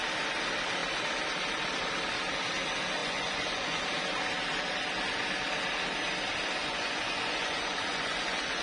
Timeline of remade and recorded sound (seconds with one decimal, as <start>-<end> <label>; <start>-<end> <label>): 0.0-3.0 recorded; 3.0-3.8 remade; 3.8-6.6 recorded; 6.6-8.6 remade